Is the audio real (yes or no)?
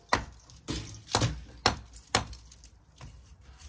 yes